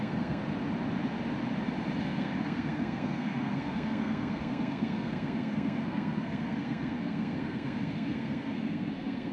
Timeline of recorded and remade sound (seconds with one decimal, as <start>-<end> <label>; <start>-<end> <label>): 0.0-0.4 remade; 0.4-2.0 recorded; 2.0-9.3 remade